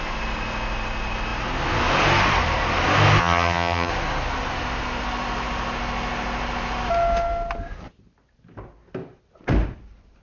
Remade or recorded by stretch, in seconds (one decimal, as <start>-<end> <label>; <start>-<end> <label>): 0.0-3.2 recorded; 3.2-3.9 remade; 3.9-10.2 recorded